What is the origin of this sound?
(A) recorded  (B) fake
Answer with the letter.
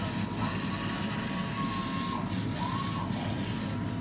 A